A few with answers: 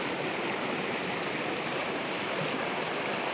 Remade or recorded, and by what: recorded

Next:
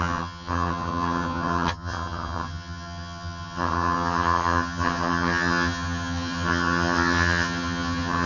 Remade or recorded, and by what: remade, vocoder, HiFi-GAN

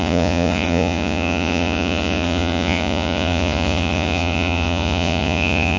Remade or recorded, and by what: remade, vocoder, Vocos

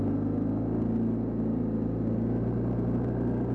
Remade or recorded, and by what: recorded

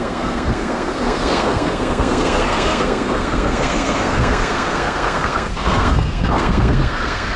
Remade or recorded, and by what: remade, codec, SNAC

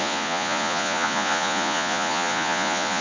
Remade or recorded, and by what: remade, vocoder, Vocos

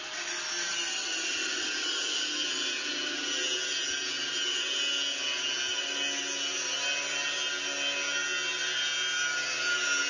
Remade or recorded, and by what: recorded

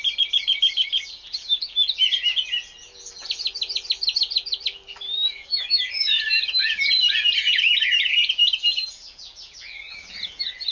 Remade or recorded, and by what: remade, vocoder, BigVGAN v2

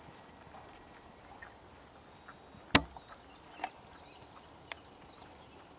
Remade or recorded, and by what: recorded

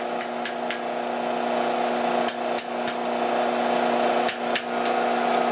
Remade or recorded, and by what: recorded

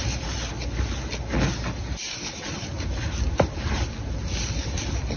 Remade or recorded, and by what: recorded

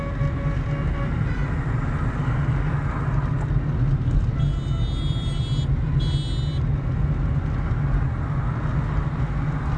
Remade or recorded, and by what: recorded